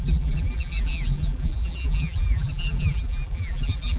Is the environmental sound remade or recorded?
remade